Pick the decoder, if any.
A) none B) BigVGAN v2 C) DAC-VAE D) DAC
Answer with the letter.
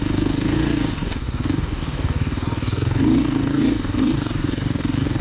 D